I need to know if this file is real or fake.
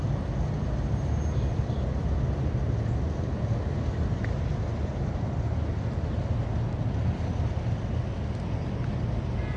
real